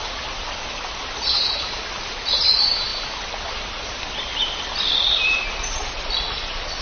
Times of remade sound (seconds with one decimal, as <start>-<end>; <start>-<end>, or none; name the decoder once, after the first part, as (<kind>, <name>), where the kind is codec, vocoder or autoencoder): none